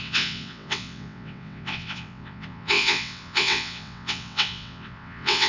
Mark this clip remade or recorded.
remade